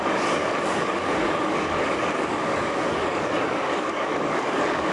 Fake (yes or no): yes